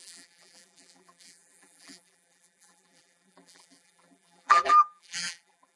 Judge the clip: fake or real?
fake